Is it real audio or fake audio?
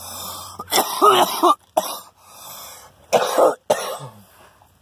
real